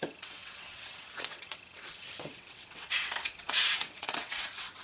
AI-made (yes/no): yes